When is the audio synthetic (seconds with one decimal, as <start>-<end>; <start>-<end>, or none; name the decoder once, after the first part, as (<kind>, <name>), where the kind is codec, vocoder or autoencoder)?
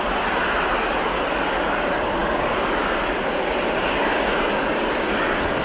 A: none